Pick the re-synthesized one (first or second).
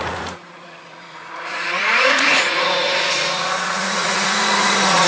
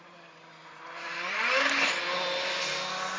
first